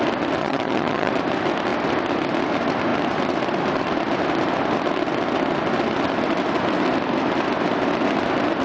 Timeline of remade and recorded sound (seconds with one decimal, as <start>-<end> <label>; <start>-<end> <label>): 0.0-0.4 recorded; 0.4-1.1 remade; 1.1-8.6 recorded